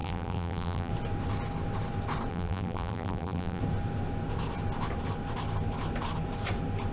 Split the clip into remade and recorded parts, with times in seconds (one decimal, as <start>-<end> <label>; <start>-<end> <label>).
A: 0.0-0.9 remade; 0.9-2.3 recorded; 2.3-3.6 remade; 3.6-6.9 recorded